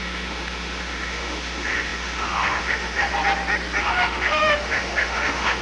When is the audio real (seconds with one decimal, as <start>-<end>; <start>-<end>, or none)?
3.1-3.8